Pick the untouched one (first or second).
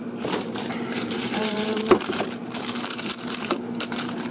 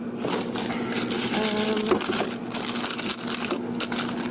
second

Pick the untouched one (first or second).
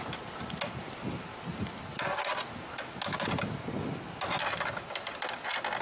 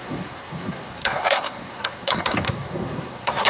first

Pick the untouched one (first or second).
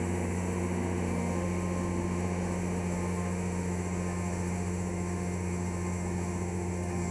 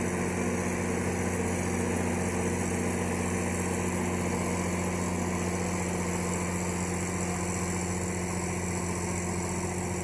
second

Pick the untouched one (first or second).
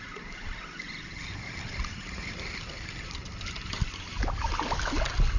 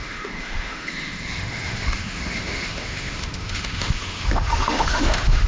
first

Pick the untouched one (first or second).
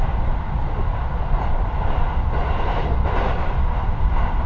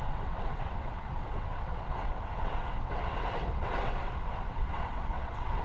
first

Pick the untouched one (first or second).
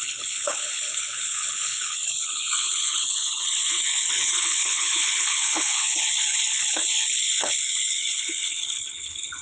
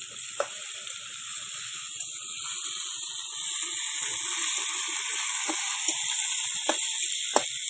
second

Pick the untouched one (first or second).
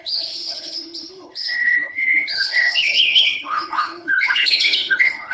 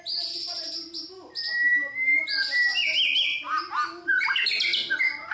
second